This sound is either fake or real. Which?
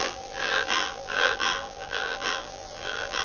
fake